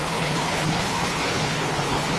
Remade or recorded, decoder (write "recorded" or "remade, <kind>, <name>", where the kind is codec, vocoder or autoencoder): remade, codec, HILCodec